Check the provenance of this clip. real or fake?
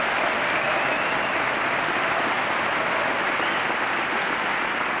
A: real